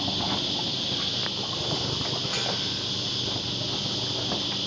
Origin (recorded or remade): recorded